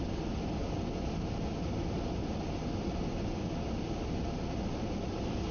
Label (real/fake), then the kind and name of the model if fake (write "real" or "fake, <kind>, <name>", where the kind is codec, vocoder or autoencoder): real